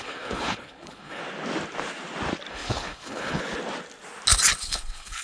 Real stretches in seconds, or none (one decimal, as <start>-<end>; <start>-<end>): 1.2-2.5; 3.4-4.6